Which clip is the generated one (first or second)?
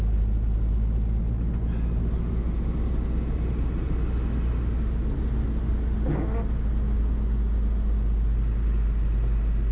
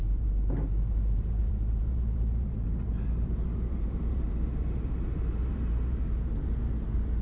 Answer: second